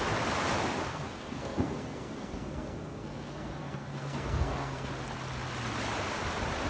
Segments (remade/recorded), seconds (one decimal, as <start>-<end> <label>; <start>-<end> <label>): 0.0-0.9 recorded; 0.9-4.9 remade; 4.9-6.7 recorded